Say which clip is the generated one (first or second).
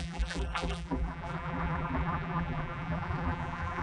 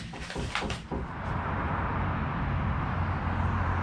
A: first